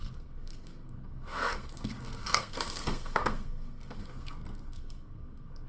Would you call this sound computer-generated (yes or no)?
yes